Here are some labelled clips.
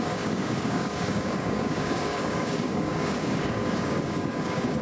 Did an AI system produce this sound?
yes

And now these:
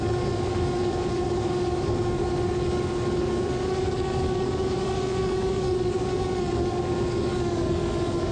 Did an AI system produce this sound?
yes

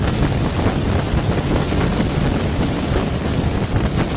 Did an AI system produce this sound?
no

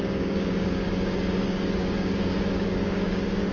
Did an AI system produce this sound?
yes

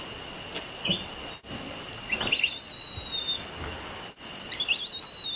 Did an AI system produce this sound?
no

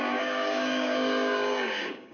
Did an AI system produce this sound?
yes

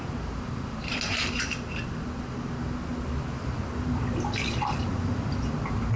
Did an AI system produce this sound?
no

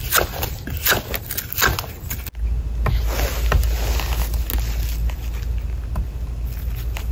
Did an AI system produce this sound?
no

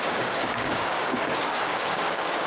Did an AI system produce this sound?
yes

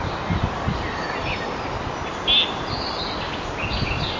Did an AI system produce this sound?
no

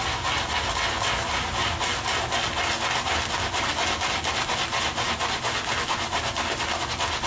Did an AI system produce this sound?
no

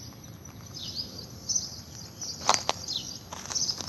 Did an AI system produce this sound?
no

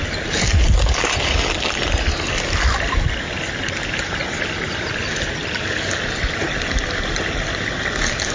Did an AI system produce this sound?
no